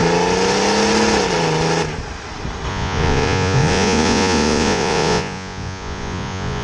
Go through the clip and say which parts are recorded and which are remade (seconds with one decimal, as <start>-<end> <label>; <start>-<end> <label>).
0.0-2.7 recorded; 2.7-6.6 remade